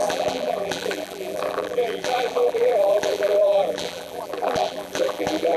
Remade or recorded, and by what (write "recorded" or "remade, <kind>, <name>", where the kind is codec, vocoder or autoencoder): remade, vocoder, BigVGAN v2